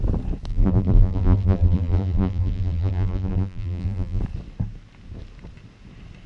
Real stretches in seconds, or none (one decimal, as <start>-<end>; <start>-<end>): 0.0-0.5; 4.2-6.3